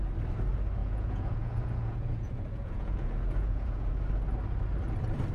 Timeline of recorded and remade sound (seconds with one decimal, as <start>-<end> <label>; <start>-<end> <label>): 0.0-0.8 recorded; 0.8-3.9 remade; 3.9-5.3 recorded